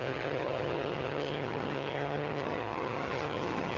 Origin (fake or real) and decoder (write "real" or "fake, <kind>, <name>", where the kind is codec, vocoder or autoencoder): fake, vocoder, HiFi-GAN